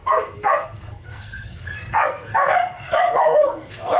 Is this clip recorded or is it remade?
remade